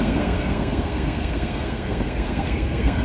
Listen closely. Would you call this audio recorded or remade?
remade